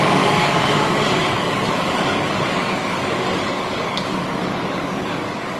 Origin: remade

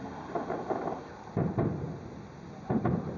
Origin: recorded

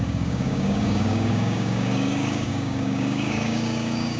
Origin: remade